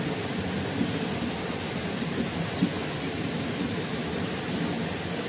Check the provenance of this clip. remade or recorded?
recorded